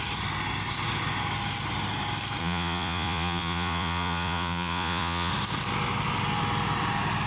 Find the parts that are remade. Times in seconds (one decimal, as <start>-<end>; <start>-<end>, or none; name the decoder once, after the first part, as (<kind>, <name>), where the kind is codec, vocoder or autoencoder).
2.4-5.3 (vocoder, Vocos)